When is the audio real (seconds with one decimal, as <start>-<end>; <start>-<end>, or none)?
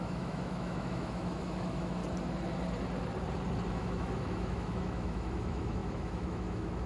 2.0-3.7